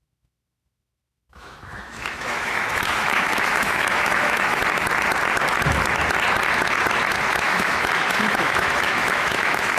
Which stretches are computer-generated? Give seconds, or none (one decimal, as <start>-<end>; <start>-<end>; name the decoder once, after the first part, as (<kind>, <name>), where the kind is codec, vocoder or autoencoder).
0.0-4.6 (autoencoder, DAC-VAE); 7.3-9.8